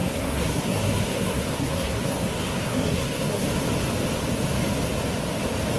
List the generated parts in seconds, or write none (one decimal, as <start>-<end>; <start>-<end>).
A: 0.0-3.5